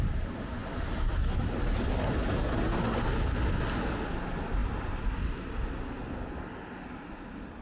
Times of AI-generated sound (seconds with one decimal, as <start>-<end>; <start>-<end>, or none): none